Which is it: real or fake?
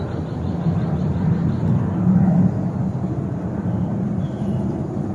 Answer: real